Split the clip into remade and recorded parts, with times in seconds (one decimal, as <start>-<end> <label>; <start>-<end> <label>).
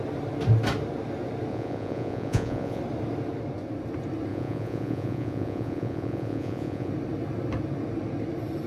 0.0-1.5 recorded; 1.5-2.8 remade; 2.8-4.3 recorded; 4.3-6.9 remade; 6.9-8.7 recorded